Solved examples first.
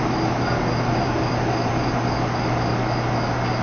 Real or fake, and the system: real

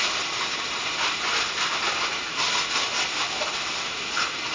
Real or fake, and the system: real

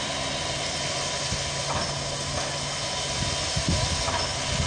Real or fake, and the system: real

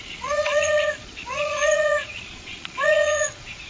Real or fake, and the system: fake, vocoder, Vocos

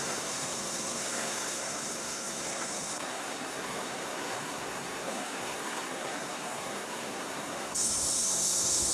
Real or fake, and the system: fake, codec, SNAC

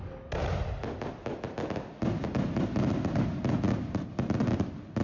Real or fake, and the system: real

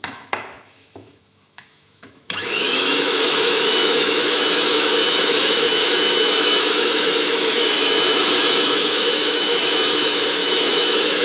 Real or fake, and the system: fake, autoencoder, DAC-VAE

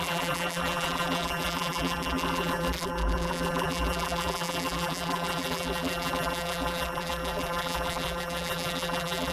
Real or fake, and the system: fake, vocoder, BigVGAN v2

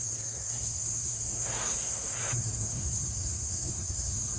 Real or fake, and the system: fake, codec, SNAC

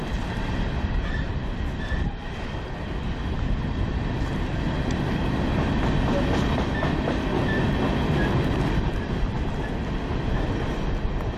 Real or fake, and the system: real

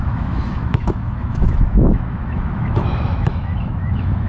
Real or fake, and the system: fake, autoencoder, DAC-VAE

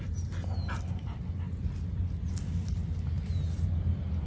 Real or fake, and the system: real